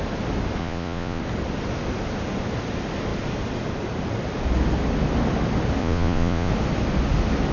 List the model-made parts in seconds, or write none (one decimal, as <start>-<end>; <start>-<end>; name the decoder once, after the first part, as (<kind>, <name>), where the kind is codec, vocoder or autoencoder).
0.6-1.2 (vocoder, Vocos); 5.8-6.5